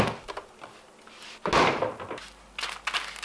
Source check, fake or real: real